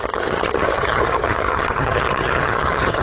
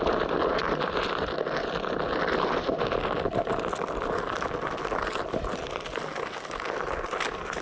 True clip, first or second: second